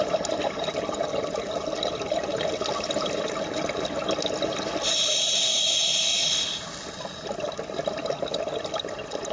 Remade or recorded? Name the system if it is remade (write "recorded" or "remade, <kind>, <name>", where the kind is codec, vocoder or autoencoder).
recorded